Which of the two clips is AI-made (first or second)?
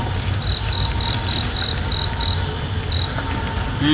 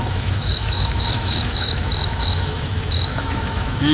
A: second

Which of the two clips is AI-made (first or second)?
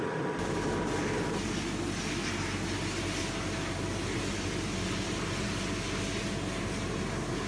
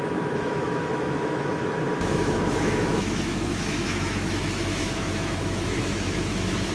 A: second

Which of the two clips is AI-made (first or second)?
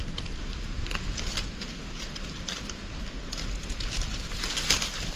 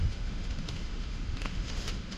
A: second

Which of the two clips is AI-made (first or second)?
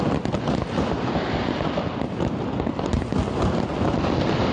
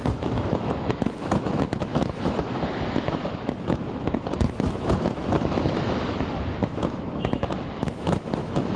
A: second